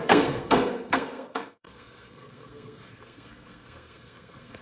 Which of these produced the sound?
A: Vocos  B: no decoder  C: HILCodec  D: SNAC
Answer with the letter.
D